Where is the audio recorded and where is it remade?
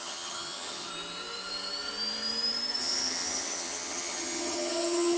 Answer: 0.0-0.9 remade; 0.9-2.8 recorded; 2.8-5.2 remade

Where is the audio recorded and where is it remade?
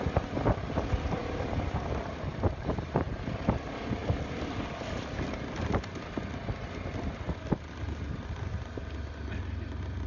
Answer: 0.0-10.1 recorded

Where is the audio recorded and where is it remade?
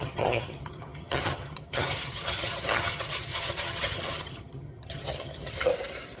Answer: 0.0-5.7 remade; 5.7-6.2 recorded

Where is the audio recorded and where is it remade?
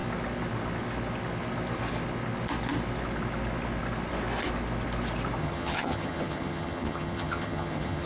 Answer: 0.0-5.4 recorded; 5.4-8.1 remade